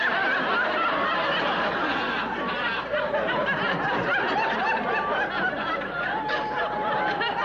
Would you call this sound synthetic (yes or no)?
no